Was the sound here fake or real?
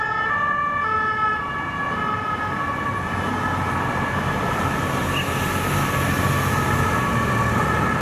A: real